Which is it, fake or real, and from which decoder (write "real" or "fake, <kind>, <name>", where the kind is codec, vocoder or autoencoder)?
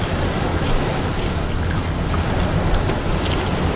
real